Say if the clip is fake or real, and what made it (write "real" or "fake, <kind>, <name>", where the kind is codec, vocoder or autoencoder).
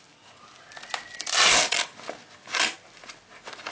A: real